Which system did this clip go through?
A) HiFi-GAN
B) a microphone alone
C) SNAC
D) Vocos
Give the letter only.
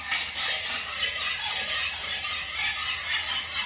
B